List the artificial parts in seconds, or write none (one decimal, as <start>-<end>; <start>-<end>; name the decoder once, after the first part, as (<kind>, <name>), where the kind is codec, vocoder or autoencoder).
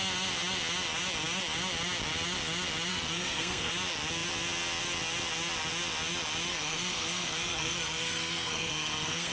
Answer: 2.9-3.7 (codec, SNAC); 6.5-9.3